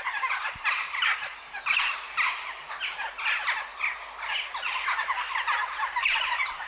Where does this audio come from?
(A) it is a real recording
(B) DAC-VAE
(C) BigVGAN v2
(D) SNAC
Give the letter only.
A